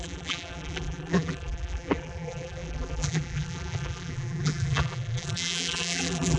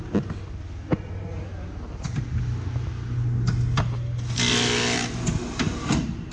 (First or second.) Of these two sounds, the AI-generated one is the first